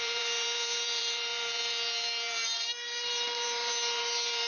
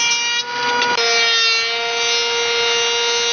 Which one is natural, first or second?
second